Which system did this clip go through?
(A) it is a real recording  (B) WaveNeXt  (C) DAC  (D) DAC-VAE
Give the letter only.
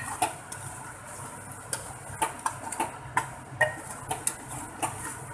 A